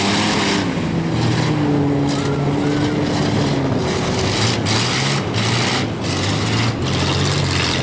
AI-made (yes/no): no